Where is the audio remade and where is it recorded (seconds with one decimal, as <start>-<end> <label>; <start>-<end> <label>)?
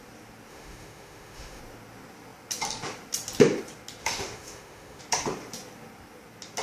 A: 0.0-0.5 recorded; 0.5-1.6 remade; 1.6-4.0 recorded; 4.0-5.0 remade; 5.0-6.6 recorded